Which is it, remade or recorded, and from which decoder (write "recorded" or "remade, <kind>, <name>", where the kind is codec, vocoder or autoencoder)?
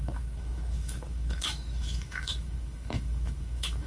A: remade, autoencoder, DAC-VAE